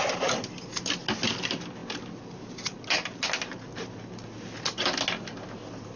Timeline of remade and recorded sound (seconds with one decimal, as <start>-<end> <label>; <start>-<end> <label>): 0.0-6.0 recorded

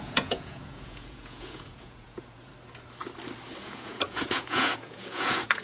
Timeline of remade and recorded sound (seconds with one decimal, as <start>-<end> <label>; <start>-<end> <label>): 0.0-2.5 remade; 2.5-3.6 recorded; 3.6-5.6 remade

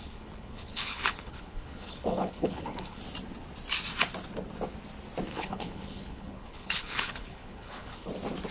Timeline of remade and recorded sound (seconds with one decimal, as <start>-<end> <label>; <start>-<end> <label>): 0.0-3.0 remade; 3.0-5.3 recorded; 5.3-8.1 remade; 8.1-8.5 recorded

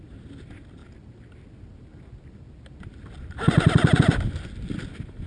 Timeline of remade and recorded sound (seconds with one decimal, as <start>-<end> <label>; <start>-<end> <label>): 0.0-5.3 recorded

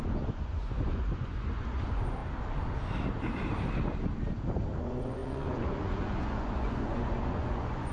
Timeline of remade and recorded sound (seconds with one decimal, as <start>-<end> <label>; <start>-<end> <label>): 0.0-2.2 remade; 2.2-4.8 recorded; 4.8-7.9 remade

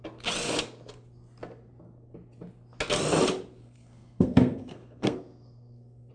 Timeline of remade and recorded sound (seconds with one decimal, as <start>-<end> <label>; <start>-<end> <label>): 0.0-3.6 recorded; 3.6-6.1 remade